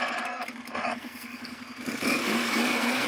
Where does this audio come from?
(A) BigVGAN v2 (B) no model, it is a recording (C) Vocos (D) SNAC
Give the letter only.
D